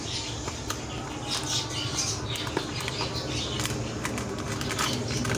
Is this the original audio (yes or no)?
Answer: yes